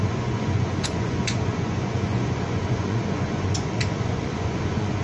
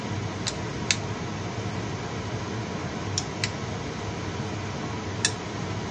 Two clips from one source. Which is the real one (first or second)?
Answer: second